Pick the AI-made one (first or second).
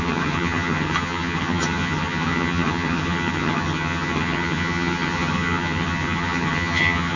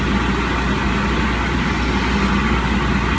first